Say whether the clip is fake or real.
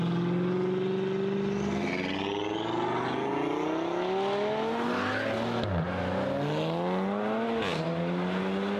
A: real